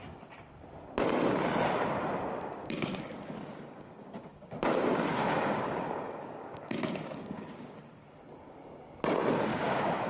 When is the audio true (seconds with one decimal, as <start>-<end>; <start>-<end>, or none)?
0.0-2.6; 4.5-5.1; 7.8-9.5